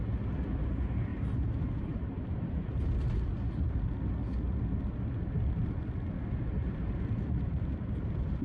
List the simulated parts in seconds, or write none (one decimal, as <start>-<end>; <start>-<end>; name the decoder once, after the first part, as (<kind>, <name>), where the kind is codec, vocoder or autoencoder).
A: 1.1-2.8 (vocoder, BigVGAN v2); 6.6-7.1